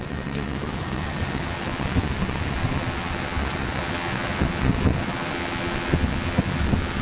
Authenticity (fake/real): fake